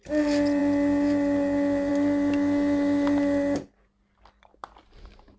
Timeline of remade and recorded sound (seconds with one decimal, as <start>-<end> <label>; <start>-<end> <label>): 0.0-5.4 recorded